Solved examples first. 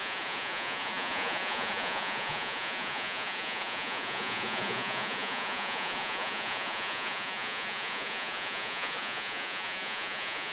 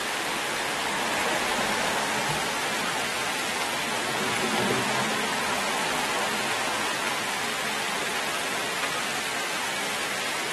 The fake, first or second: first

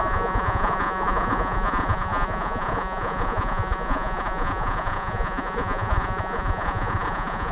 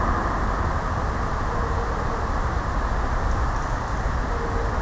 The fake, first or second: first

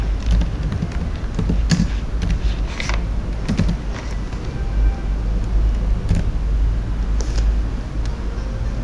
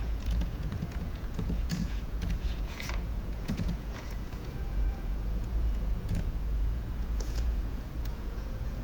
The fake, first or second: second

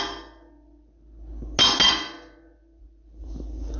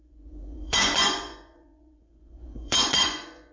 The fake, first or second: second